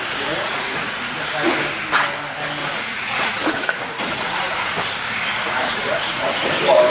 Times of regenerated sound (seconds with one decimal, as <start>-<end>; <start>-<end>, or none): 0.0-1.0; 2.6-4.8; 5.3-6.5